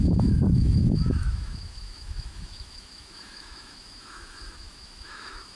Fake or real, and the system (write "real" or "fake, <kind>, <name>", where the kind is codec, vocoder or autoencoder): fake, autoencoder, DAC-VAE